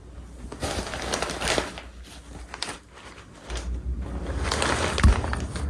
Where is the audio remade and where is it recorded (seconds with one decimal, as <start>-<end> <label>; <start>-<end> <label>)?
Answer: 0.0-5.7 recorded